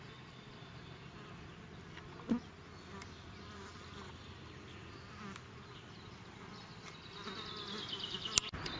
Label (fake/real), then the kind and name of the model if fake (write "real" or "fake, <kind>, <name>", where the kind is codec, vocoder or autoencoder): real